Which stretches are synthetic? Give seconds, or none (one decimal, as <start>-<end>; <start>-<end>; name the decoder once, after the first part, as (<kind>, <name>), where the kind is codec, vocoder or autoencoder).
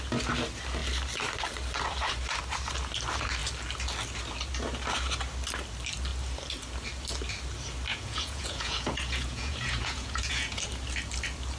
7.9-10.6 (vocoder, Vocos)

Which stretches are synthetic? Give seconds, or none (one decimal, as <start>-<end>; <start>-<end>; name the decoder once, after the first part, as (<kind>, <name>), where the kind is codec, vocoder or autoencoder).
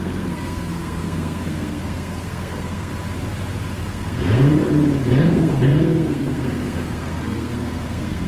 0.0-2.9 (codec, SNAC); 3.8-4.5; 5.2-8.3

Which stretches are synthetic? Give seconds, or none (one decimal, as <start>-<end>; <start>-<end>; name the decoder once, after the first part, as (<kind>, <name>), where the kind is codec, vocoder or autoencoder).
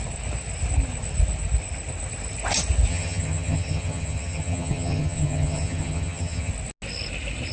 2.9-6.5 (vocoder, HiFi-GAN)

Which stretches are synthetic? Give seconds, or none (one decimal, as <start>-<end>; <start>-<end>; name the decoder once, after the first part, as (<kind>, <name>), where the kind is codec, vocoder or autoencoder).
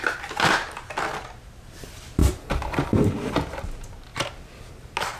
none